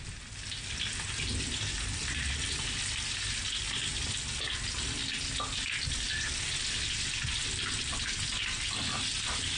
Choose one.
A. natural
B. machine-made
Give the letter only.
A